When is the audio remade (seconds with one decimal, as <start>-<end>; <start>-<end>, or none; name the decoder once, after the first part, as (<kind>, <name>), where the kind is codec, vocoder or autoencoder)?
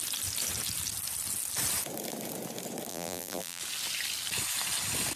2.9-3.6 (vocoder, BigVGAN v2)